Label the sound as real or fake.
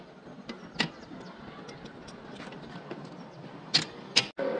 real